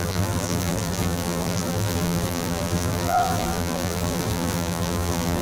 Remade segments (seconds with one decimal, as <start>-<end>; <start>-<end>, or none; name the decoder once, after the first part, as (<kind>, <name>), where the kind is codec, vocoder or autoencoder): 0.0-5.4 (vocoder, BigVGAN v2)

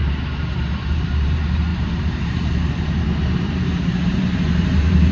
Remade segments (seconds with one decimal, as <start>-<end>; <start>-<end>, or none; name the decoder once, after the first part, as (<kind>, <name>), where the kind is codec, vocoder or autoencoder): 0.0-5.1 (vocoder, BigVGAN v2)

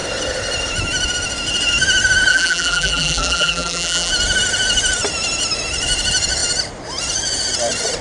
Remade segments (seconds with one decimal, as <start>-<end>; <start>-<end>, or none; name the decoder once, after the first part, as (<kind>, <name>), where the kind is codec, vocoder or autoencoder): 2.3-4.1 (vocoder, BigVGAN v2)